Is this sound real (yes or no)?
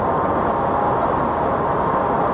yes